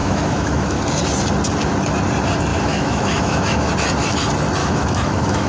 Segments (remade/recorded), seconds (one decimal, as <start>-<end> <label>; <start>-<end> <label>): 0.0-0.8 remade; 0.8-2.5 recorded; 2.5-3.7 remade; 3.7-4.6 recorded; 4.6-5.5 remade